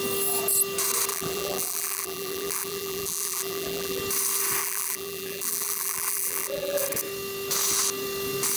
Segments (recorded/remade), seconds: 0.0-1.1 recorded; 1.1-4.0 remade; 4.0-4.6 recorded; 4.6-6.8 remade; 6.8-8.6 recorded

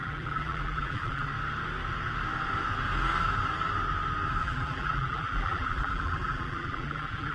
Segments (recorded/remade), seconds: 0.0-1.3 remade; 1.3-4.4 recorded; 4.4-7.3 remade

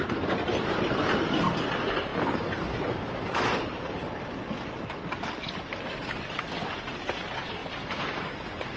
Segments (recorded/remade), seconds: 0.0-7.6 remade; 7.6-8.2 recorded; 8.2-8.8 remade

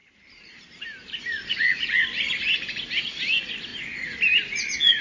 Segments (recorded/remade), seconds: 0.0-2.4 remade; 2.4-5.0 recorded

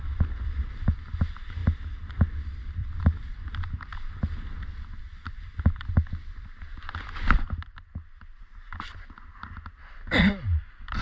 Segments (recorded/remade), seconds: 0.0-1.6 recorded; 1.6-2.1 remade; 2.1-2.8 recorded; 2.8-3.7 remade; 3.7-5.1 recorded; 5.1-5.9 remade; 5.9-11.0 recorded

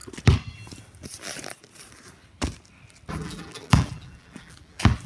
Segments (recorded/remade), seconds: 0.0-3.1 recorded; 3.1-5.1 remade

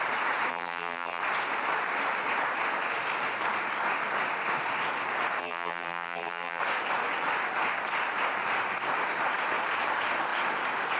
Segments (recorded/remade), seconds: 0.0-0.5 recorded; 0.5-1.2 remade; 1.2-5.4 recorded; 5.4-6.6 remade; 6.6-11.0 recorded

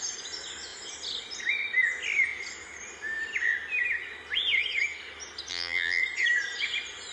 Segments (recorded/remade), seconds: 0.0-5.5 recorded; 5.5-6.0 remade; 6.0-7.1 recorded